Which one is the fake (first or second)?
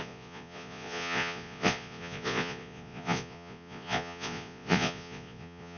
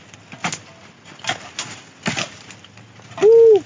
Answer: first